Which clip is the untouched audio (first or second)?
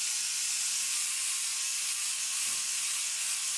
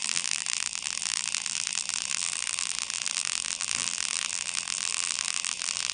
first